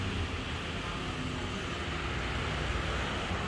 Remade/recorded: recorded